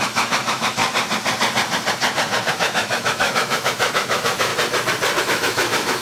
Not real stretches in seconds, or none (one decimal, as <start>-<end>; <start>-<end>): 0.0-0.8; 2.5-4.5; 5.2-6.0

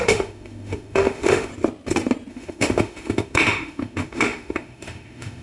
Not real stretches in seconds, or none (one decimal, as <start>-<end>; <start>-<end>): 0.0-1.5; 2.3-5.4

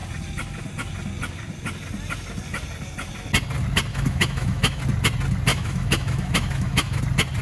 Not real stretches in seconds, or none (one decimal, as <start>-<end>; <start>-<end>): 3.9-4.8; 5.5-7.0

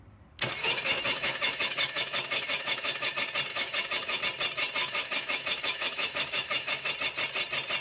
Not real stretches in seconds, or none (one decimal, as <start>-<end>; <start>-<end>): 0.6-3.1; 3.5-4.2; 4.8-6.9